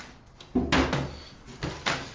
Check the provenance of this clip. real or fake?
real